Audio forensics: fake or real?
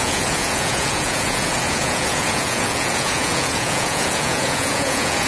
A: fake